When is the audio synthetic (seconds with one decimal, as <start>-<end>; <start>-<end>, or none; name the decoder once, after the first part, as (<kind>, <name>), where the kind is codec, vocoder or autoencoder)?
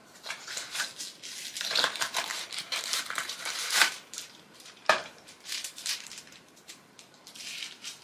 0.0-0.8 (vocoder, BigVGAN v2); 2.3-6.7